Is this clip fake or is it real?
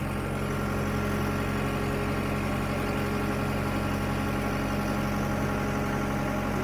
real